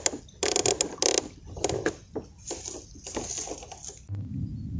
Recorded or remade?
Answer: recorded